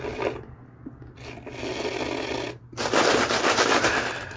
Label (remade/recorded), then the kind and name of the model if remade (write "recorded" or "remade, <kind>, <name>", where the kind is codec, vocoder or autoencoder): recorded